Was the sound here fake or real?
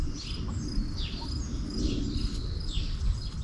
fake